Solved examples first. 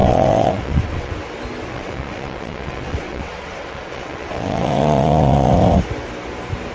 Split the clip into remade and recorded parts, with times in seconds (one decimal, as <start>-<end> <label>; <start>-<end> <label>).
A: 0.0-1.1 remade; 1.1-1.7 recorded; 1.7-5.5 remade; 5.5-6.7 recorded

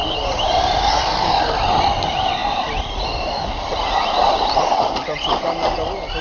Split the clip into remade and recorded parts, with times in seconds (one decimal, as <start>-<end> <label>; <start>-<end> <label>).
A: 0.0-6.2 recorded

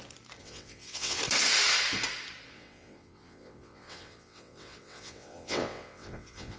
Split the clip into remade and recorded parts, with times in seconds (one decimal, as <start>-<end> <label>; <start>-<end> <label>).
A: 0.0-0.4 recorded; 0.4-1.2 remade; 1.2-2.5 recorded; 2.5-6.6 remade